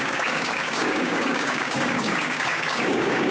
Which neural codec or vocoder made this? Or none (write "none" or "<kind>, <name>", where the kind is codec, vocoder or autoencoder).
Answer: codec, DAC